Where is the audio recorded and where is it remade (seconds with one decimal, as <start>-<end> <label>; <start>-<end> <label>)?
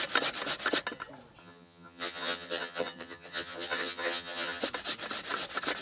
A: 0.0-1.4 recorded; 1.4-4.6 remade; 4.6-5.8 recorded